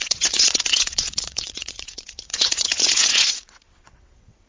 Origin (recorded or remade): remade